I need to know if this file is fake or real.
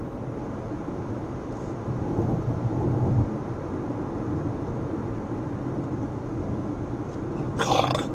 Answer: real